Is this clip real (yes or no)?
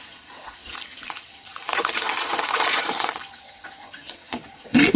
no